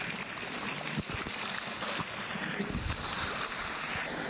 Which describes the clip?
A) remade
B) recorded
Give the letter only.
B